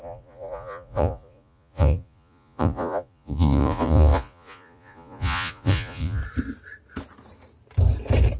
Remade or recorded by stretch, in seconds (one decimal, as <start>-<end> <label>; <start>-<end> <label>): 0.0-6.2 remade; 6.2-8.4 recorded